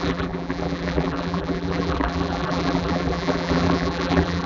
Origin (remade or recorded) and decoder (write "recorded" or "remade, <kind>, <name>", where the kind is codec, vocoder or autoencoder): remade, vocoder, BigVGAN v2